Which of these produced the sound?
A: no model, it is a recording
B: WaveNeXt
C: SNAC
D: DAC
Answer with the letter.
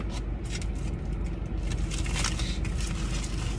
A